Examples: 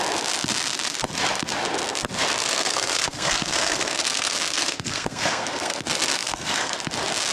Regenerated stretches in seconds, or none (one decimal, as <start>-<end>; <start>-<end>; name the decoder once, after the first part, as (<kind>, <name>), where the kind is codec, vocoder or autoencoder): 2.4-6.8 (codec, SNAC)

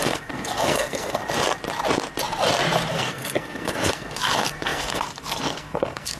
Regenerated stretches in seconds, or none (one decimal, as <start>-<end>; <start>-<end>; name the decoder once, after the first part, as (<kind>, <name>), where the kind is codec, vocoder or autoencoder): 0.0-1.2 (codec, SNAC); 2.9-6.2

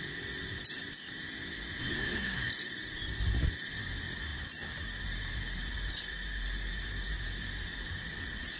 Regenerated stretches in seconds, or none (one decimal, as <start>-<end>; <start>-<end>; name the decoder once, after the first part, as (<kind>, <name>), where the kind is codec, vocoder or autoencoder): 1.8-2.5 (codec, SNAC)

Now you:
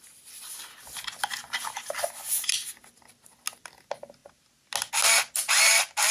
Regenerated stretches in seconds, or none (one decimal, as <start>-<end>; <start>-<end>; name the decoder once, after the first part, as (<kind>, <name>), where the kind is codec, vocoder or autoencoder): none

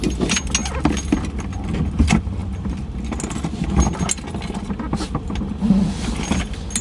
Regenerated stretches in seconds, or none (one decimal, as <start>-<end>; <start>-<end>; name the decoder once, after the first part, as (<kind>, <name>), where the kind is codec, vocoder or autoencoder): none

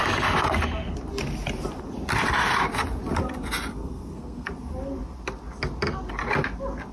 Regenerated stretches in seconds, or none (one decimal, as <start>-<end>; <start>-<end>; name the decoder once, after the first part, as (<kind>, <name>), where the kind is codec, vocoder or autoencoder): 3.7-4.5 (codec, SNAC)